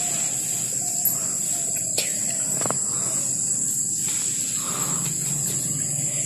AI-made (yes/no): no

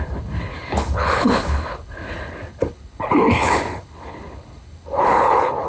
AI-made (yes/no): yes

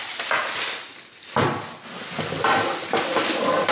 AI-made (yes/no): no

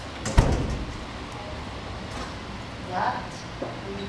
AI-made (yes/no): no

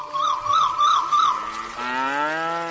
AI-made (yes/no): no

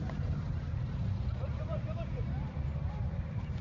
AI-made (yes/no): yes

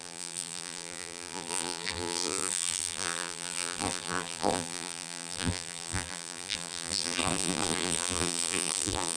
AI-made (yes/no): yes